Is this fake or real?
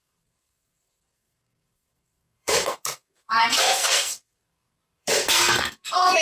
fake